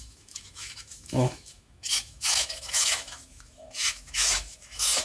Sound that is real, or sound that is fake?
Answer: fake